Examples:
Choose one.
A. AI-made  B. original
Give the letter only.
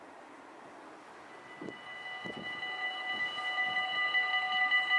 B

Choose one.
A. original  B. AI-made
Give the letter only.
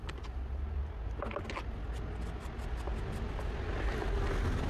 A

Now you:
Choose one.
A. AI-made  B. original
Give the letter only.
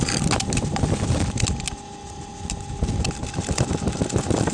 B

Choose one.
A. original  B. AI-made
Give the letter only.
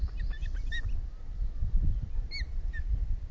A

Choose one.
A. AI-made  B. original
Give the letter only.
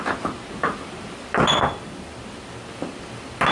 B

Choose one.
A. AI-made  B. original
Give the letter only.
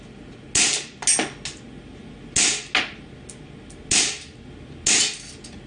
B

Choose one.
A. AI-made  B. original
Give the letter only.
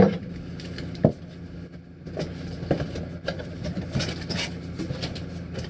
B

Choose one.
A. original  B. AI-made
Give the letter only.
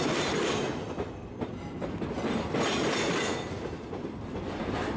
A